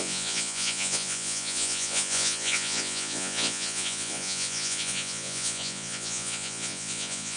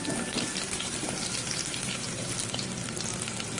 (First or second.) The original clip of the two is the second